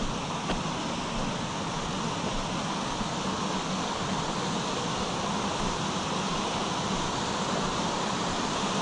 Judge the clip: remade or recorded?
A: recorded